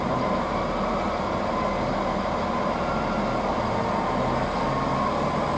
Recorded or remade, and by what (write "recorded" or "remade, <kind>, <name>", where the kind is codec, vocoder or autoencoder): recorded